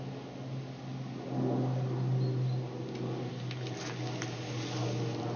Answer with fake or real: real